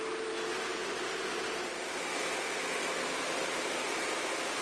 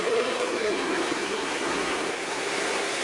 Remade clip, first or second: second